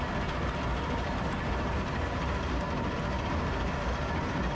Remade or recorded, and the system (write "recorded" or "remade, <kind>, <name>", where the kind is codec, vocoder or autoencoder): recorded